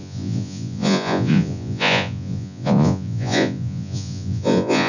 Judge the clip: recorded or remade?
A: remade